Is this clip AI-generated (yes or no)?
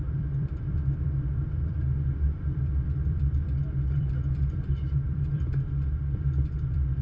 yes